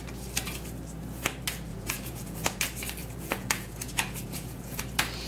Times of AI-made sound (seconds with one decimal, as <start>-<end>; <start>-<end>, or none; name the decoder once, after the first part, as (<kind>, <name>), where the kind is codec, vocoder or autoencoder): 1.7-2.6 (vocoder, Vocos); 3.0-4.8